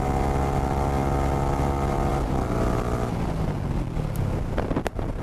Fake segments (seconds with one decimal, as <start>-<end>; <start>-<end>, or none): none